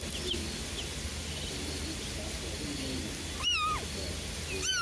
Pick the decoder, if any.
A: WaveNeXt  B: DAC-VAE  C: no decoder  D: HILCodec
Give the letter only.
C